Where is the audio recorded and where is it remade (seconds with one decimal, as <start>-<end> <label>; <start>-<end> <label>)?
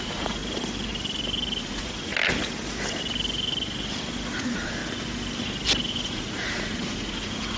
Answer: 0.0-0.4 remade; 0.4-1.6 recorded; 1.6-2.1 remade; 2.1-4.3 recorded; 4.3-4.8 remade; 4.8-5.9 recorded; 5.9-7.6 remade